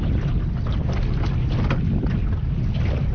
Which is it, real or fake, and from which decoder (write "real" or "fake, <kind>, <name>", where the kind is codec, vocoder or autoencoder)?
real